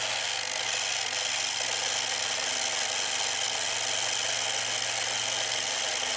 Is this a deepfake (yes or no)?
no